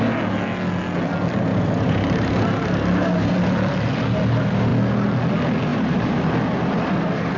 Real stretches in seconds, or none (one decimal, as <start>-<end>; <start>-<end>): 0.0-1.5; 2.3-5.7; 6.2-7.4